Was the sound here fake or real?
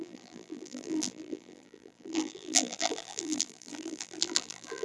fake